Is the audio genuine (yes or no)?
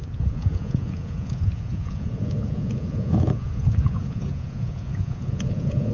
no